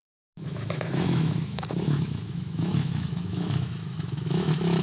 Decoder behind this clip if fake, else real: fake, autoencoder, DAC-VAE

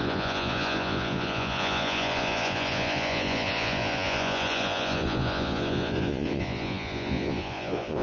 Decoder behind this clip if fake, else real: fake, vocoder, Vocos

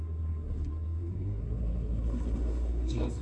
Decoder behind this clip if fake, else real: fake, codec, SNAC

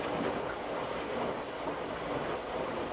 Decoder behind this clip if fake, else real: real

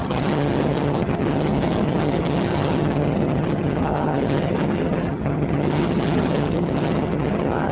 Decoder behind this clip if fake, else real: fake, vocoder, HiFi-GAN